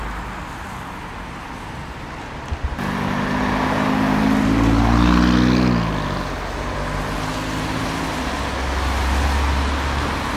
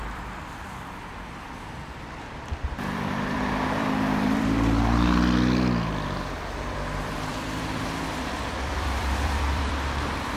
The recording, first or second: first